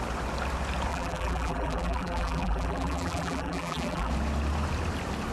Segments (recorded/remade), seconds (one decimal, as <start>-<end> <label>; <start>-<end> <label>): 0.0-0.9 recorded; 0.9-4.1 remade; 4.1-5.3 recorded

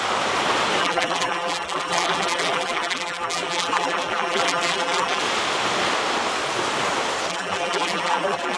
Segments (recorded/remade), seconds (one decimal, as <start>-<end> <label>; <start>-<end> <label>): 0.0-0.8 recorded; 0.8-5.2 remade; 5.2-7.3 recorded; 7.3-8.6 remade

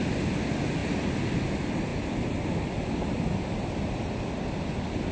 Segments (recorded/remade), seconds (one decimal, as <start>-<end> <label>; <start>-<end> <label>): 0.0-5.1 recorded

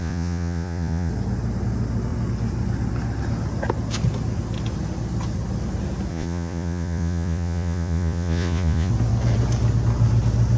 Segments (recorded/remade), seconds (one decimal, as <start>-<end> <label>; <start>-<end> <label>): 0.0-1.1 remade; 1.1-6.1 recorded; 6.1-8.9 remade; 8.9-10.6 recorded

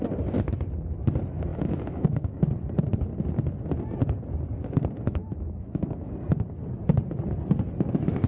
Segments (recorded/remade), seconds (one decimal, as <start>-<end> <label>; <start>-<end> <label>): 0.0-1.5 recorded; 1.5-2.4 remade; 2.4-5.2 recorded; 5.2-6.1 remade; 6.1-8.3 recorded

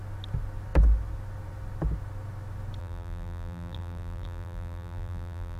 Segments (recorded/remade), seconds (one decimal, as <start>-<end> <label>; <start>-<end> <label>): 0.0-2.8 recorded; 2.8-5.6 remade

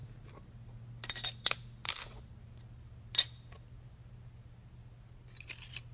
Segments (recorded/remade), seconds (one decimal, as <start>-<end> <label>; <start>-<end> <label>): 0.0-5.9 recorded

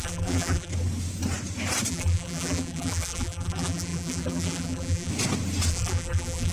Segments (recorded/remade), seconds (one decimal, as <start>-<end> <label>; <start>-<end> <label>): 0.0-0.7 remade; 0.7-1.9 recorded; 1.9-5.1 remade; 5.1-5.7 recorded; 5.7-6.5 remade